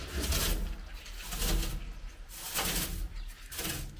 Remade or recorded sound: recorded